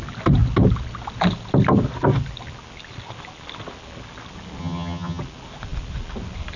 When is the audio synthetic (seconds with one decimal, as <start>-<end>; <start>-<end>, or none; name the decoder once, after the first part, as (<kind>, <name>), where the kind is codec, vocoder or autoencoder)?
4.6-5.2 (vocoder, HiFi-GAN)